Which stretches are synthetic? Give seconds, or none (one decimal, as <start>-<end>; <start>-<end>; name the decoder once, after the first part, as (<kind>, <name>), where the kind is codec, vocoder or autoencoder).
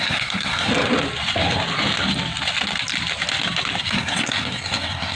0.0-0.7 (codec, SNAC); 3.8-5.2